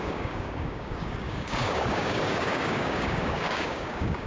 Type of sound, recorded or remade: remade